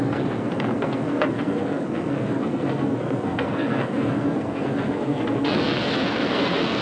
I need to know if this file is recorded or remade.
remade